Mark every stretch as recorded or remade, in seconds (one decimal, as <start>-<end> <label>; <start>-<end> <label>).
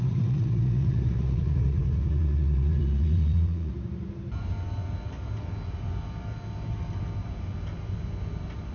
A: 0.0-3.7 remade; 3.7-8.7 recorded